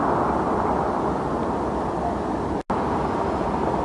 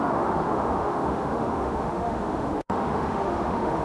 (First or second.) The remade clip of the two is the second